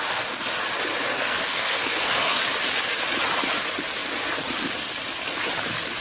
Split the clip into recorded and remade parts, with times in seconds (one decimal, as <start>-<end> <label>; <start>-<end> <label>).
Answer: 0.0-1.1 recorded; 1.1-2.4 remade; 2.4-6.0 recorded